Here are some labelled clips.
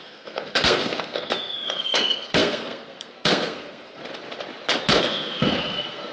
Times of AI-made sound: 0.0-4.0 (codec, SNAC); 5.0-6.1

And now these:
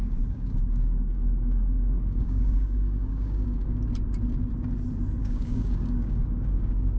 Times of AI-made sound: 0.0-3.6 (codec, DAC); 5.2-7.0

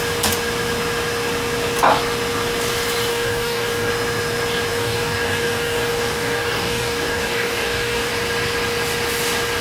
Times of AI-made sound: 3.1-3.9 (codec, DAC); 4.7-8.1

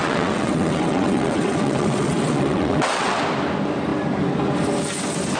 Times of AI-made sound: 0.0-3.2 (vocoder, WaveNeXt)